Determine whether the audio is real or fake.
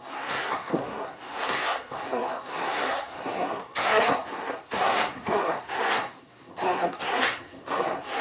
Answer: fake